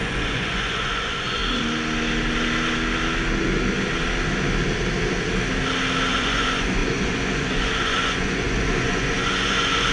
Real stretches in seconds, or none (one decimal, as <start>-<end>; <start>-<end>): 1.4-6.1